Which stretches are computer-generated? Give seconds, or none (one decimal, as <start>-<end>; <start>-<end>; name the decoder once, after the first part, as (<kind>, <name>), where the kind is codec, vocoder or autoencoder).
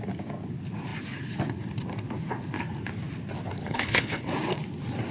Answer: 3.6-4.2 (codec, HILCodec)